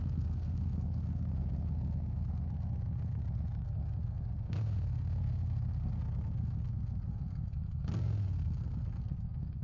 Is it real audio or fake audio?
fake